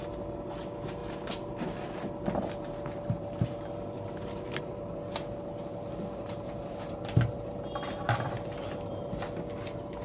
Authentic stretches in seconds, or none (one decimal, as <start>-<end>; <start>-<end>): 0.0-10.0